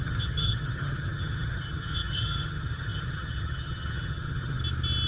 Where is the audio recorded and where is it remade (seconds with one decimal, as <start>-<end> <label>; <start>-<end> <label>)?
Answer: 0.0-4.6 remade; 4.6-5.1 recorded